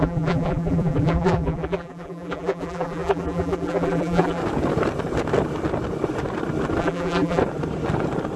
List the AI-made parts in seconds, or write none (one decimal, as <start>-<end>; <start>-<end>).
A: 0.0-4.4; 6.8-7.4

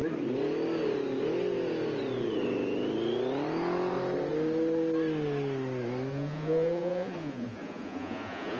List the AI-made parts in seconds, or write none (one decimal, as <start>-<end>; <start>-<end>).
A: 6.1-8.6

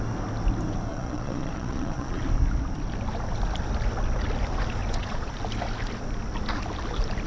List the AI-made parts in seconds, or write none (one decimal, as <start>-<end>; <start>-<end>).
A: 0.9-2.2; 4.8-5.3

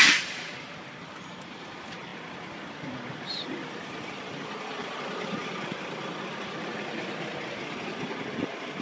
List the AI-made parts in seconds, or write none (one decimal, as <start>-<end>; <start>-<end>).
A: 0.0-8.8

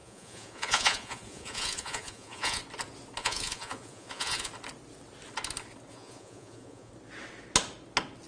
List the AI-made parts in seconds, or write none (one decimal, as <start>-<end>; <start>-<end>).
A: 0.0-2.6; 3.2-4.5; 5.9-6.9

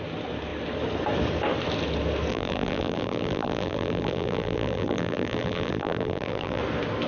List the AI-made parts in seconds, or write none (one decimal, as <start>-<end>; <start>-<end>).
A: 2.3-6.6

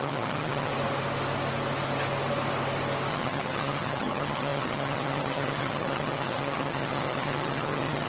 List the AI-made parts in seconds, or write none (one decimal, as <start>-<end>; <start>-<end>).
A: 0.0-0.7; 3.1-8.1

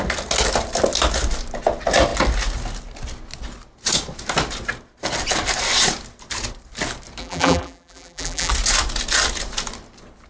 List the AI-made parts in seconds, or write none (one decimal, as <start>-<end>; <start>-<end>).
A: 7.2-8.5